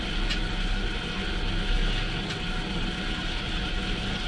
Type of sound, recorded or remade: recorded